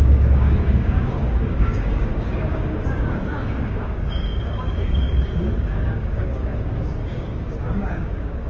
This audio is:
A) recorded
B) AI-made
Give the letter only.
B